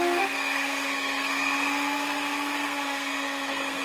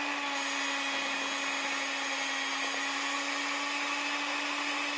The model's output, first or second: first